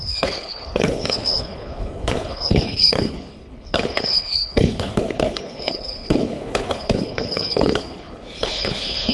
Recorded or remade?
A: remade